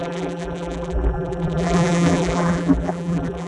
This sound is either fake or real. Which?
fake